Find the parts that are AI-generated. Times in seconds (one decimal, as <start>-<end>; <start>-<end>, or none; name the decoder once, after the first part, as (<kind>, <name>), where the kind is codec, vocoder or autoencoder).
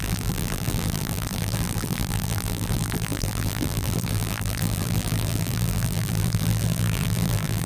0.0-7.7 (vocoder, BigVGAN v2)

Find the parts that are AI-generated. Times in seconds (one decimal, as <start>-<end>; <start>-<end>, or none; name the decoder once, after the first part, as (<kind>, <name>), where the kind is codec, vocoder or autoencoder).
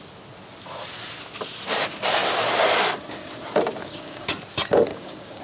3.8-4.4 (codec, DAC); 4.9-5.4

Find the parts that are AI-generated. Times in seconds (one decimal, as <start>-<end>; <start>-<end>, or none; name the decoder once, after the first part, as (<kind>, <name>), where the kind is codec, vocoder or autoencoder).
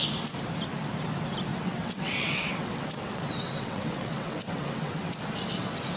1.5-5.1 (vocoder, WaveNeXt)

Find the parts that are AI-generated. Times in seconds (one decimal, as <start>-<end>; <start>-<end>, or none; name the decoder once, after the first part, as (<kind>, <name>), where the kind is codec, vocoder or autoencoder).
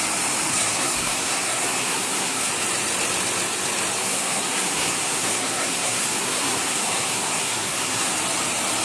0.5-2.5 (codec, SNAC); 4.0-8.1